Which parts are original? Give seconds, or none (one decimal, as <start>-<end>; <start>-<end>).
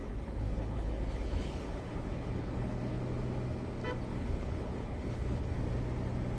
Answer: 3.0-4.1; 5.6-6.4